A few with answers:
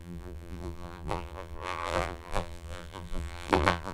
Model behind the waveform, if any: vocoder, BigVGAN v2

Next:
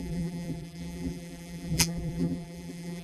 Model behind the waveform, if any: vocoder, BigVGAN v2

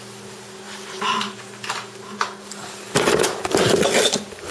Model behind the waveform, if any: none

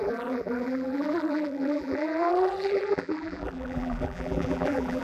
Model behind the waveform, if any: vocoder, BigVGAN v2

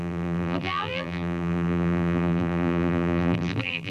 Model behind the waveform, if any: vocoder, BigVGAN v2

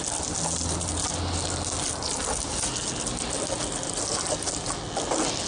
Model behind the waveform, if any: none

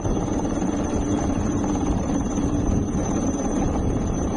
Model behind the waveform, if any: vocoder, BigVGAN v2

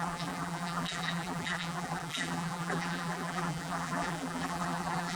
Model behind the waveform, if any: vocoder, BigVGAN v2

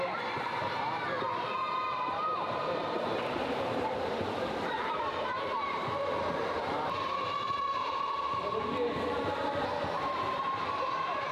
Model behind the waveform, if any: vocoder, BigVGAN v2